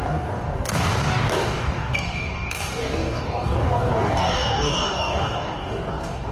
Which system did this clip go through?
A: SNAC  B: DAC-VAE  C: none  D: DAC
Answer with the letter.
D